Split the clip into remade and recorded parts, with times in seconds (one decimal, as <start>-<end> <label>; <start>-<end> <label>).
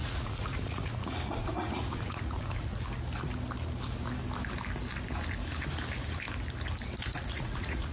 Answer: 0.0-2.7 remade; 2.7-7.2 recorded; 7.2-7.9 remade